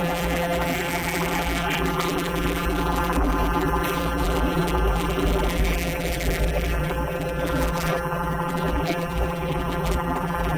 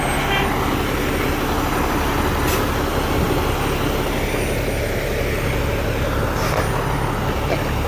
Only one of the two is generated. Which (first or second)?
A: first